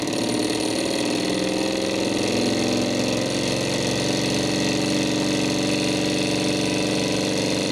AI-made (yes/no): no